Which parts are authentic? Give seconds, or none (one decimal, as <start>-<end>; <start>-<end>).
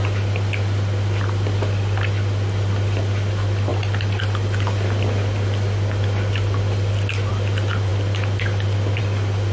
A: 0.0-9.5